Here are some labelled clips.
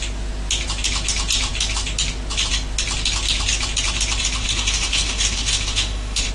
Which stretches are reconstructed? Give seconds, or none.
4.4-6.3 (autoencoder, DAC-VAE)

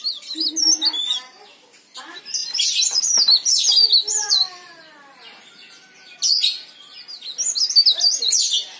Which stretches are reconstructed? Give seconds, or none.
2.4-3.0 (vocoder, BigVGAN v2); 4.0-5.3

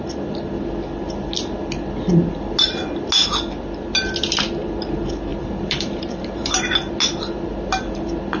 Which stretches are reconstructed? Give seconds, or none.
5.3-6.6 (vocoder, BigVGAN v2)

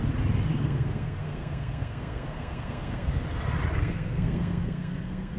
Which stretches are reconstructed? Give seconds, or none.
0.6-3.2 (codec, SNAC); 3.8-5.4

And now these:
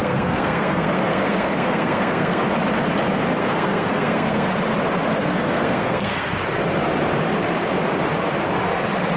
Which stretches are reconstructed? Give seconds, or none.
0.0-2.4 (codec, SNAC); 3.4-4.5; 5.2-6.3